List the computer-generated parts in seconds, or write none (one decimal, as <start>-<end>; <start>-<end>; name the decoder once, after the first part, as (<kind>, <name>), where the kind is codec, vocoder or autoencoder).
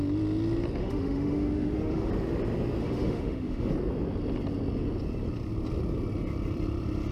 0.8-2.1 (autoencoder, DAC-VAE); 2.8-3.7